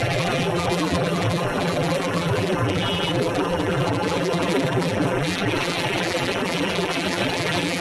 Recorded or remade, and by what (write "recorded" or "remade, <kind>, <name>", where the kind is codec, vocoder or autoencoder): remade, vocoder, BigVGAN v2